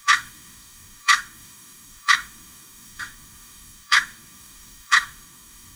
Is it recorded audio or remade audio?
remade